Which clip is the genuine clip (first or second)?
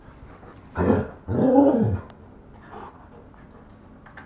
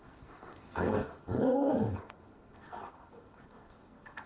first